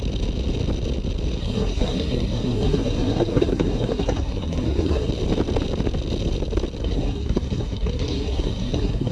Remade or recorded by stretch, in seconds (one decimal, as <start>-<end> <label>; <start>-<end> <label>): 0.0-1.4 recorded; 1.4-5.1 remade; 5.1-6.8 recorded; 6.8-9.1 remade